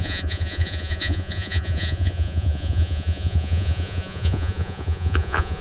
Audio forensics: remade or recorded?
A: remade